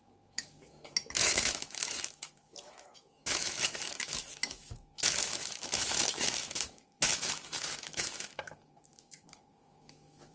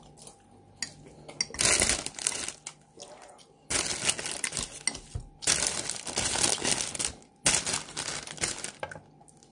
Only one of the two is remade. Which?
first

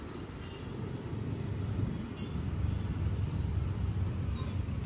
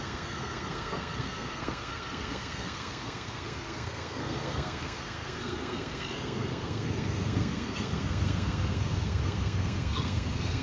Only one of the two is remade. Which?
second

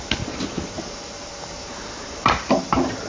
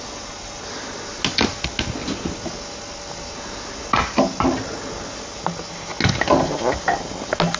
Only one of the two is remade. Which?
first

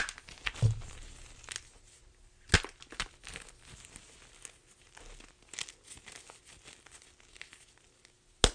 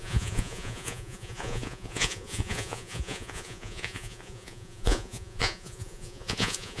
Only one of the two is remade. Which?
second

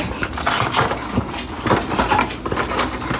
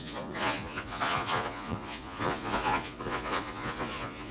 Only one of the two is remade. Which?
second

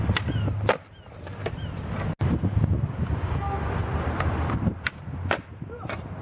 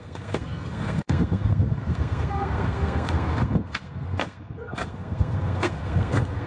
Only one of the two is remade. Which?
second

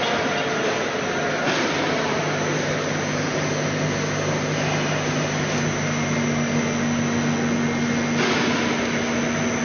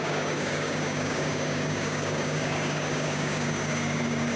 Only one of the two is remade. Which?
second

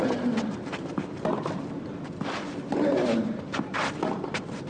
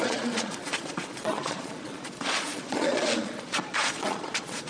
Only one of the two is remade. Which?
second